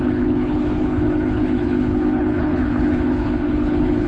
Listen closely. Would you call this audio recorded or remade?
remade